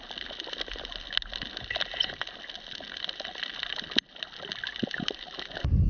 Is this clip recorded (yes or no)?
yes